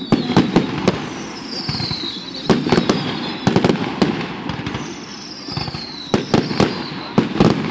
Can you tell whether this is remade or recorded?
recorded